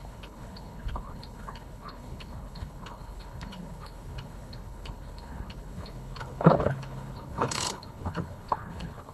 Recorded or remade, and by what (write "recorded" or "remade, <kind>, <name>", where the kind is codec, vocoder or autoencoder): remade, codec, HILCodec